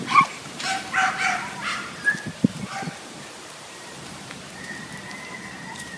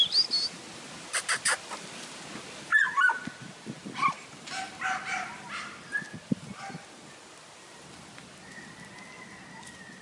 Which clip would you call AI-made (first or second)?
first